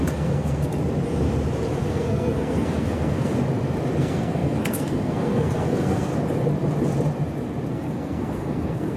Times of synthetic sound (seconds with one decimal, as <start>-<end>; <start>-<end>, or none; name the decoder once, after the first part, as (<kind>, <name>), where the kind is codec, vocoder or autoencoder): 0.0-0.8 (codec, SNAC); 1.9-3.3; 4.0-6.1; 7.7-9.0